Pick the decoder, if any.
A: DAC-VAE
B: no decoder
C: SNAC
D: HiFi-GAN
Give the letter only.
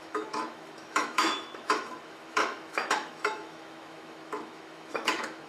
A